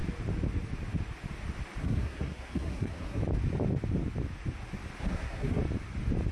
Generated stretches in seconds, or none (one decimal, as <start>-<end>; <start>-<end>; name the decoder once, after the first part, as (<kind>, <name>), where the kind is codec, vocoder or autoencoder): 1.8-3.2 (codec, SNAC); 5.0-5.6